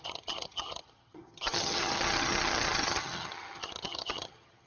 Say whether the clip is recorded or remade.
remade